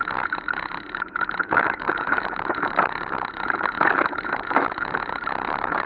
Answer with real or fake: fake